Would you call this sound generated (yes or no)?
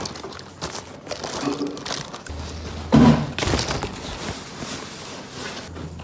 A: no